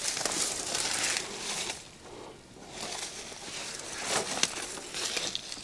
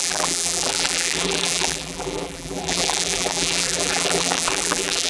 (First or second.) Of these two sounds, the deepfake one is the second